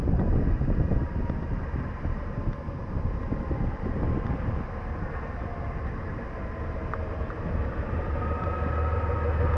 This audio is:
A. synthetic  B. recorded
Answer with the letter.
B